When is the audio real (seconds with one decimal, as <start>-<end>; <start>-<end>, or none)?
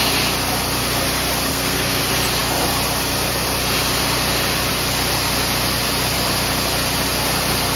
0.0-1.5; 2.0-7.8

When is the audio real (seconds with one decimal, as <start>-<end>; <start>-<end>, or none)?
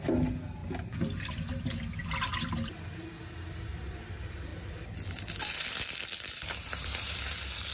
0.0-0.6; 1.3-4.5; 7.2-7.7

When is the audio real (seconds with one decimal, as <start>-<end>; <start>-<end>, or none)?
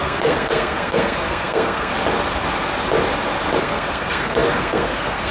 1.9-3.6